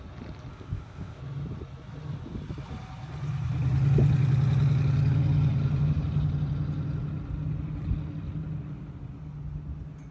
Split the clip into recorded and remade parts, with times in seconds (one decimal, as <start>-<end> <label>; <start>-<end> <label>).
0.0-0.5 recorded; 0.5-1.2 remade; 1.2-10.1 recorded

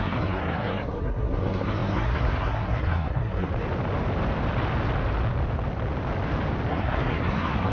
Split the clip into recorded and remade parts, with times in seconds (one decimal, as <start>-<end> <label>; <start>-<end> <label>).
0.0-3.5 remade; 3.5-6.7 recorded; 6.7-7.7 remade

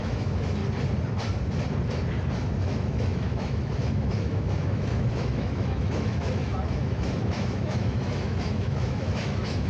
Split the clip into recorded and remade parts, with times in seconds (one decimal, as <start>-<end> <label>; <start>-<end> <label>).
0.0-0.6 remade; 0.6-2.6 recorded; 2.6-9.7 remade

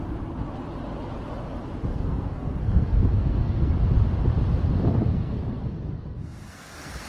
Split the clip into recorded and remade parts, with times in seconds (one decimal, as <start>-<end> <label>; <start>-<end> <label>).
0.0-1.9 recorded; 1.9-3.7 remade; 3.7-4.9 recorded; 4.9-7.1 remade